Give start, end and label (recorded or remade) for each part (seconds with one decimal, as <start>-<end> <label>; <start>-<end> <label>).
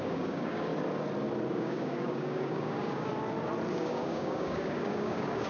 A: 0.0-0.7 remade; 0.7-1.5 recorded; 1.5-3.1 remade; 3.1-3.7 recorded; 3.7-5.5 remade